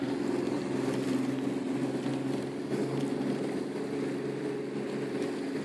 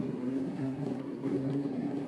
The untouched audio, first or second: first